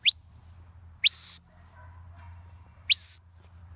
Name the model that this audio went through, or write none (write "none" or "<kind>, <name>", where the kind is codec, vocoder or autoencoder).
none